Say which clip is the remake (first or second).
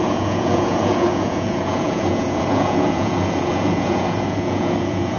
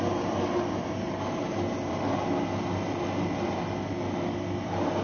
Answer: first